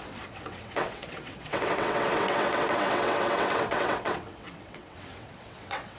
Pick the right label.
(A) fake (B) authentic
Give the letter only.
A